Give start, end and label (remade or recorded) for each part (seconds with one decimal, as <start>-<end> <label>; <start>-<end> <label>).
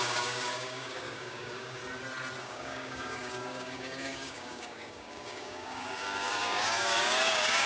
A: 0.0-1.8 remade; 1.8-2.4 recorded; 2.4-7.7 remade